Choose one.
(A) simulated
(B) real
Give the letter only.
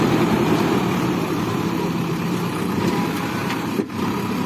A